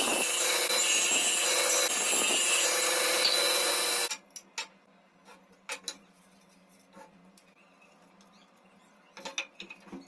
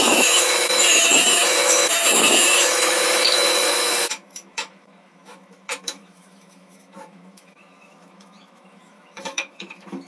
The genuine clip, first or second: first